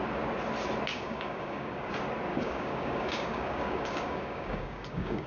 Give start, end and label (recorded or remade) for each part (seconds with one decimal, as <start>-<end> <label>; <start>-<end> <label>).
0.0-0.9 recorded; 0.9-1.9 remade; 1.9-2.3 recorded; 2.3-5.3 remade